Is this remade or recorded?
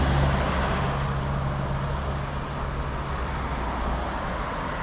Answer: recorded